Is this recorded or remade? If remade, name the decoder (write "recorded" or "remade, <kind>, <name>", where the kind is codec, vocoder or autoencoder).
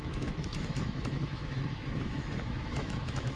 remade, autoencoder, DAC-VAE